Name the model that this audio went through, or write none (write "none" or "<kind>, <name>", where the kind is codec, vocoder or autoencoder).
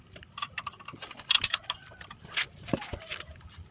none